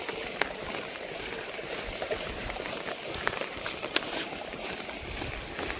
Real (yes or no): yes